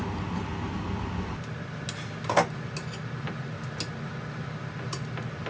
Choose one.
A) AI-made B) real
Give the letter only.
B